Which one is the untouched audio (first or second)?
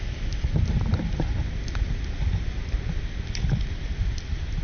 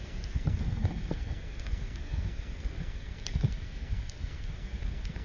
first